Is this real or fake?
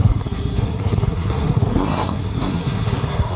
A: fake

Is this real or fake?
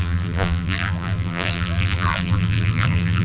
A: fake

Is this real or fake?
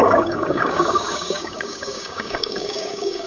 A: fake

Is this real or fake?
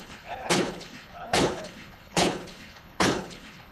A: fake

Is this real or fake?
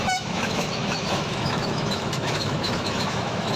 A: fake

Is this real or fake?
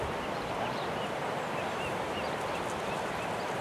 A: real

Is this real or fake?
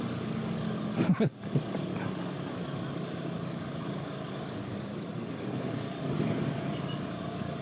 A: fake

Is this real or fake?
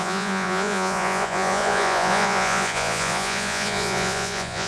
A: fake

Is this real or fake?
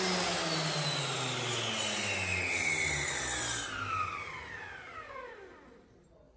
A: real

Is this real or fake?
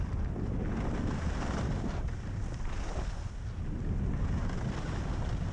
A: real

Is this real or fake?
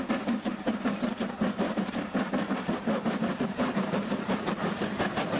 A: fake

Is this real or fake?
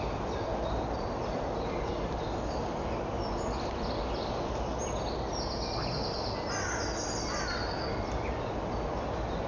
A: real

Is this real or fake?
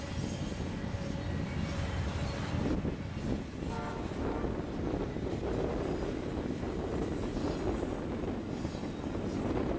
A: real